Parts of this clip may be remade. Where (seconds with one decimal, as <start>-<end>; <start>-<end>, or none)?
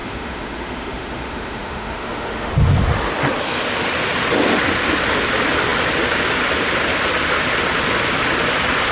0.0-2.5